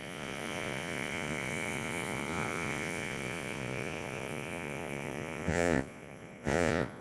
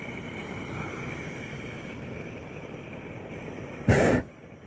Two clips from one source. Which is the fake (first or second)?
first